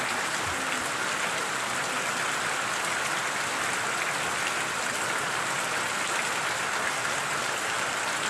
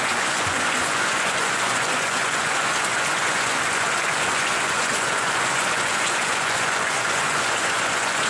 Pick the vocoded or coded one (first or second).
second